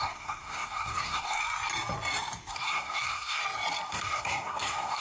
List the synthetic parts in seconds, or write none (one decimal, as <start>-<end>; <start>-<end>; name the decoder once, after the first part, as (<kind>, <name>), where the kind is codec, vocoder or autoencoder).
0.0-1.4 (codec, SNAC); 2.5-3.4; 3.9-5.0